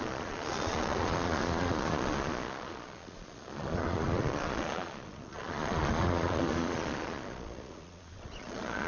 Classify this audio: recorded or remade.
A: remade